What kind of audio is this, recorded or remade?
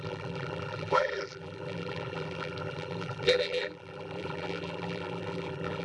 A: remade